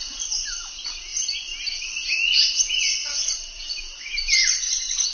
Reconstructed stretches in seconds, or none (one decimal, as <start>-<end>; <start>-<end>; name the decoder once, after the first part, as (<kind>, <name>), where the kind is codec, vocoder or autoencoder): 0.0-5.1 (vocoder, BigVGAN v2)